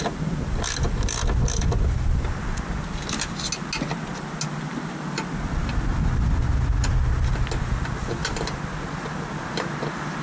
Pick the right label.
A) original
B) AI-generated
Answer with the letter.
A